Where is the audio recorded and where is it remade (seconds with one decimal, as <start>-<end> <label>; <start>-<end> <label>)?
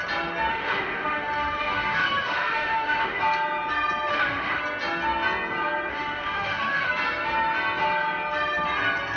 0.0-0.5 recorded; 0.5-3.2 remade; 3.2-4.1 recorded; 4.1-4.6 remade; 4.6-5.9 recorded; 5.9-6.9 remade; 6.9-9.2 recorded